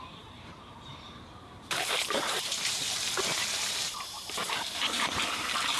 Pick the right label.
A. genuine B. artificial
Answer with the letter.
B